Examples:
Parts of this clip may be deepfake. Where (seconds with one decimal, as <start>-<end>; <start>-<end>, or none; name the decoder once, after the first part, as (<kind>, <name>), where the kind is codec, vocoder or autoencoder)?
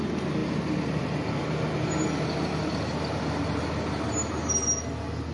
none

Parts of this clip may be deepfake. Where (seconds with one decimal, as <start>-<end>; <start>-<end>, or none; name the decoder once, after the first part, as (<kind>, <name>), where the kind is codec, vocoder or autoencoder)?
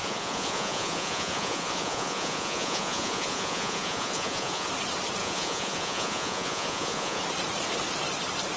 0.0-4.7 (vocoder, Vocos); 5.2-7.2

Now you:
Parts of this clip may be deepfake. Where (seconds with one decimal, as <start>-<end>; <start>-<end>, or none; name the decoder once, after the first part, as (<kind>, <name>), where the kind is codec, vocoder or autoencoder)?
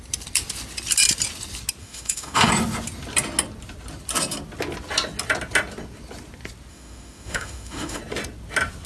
1.8-2.5 (autoencoder, DAC-VAE); 6.7-8.0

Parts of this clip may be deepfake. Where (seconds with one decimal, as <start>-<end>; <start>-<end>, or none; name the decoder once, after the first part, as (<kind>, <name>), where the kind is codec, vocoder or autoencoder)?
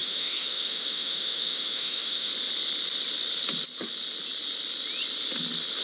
0.0-2.3 (autoencoder, DAC-VAE)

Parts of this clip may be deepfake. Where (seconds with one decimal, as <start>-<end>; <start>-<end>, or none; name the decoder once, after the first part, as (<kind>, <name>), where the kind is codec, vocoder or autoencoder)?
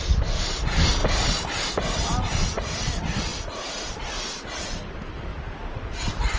5.3-6.4 (vocoder, BigVGAN v2)